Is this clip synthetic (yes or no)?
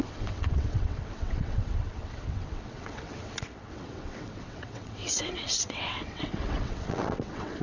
yes